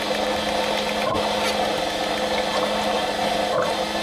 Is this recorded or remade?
recorded